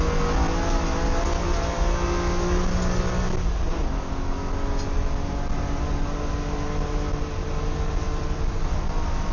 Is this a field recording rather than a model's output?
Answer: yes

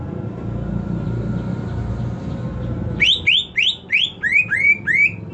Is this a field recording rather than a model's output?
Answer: yes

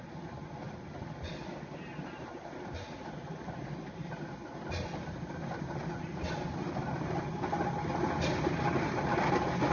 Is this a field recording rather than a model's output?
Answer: yes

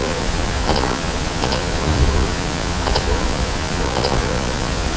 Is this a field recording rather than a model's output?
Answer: no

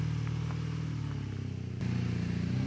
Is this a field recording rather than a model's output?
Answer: yes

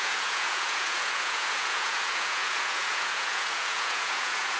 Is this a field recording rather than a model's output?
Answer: no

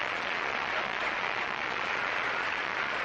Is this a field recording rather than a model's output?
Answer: no